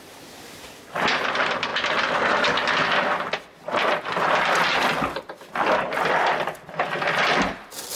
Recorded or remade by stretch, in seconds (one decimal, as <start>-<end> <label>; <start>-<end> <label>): 0.0-8.0 recorded